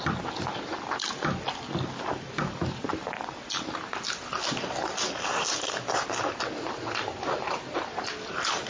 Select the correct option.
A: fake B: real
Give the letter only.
B